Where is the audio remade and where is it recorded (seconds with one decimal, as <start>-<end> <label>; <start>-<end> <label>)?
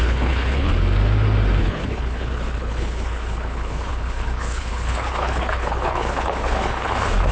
0.0-0.7 remade; 0.7-1.6 recorded; 1.6-7.3 remade